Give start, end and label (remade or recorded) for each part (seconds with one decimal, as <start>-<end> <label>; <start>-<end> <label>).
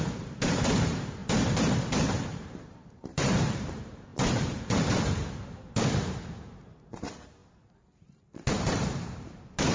0.0-1.2 remade; 1.2-1.7 recorded; 1.7-9.7 remade